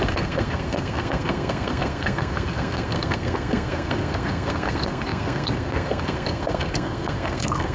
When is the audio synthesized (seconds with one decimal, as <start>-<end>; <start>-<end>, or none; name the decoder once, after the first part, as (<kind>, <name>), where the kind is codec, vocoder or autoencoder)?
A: 0.0-7.7 (codec, SNAC)